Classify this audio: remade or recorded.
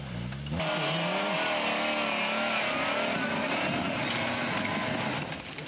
recorded